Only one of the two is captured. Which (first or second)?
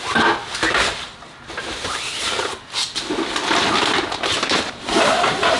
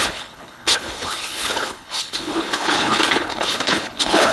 first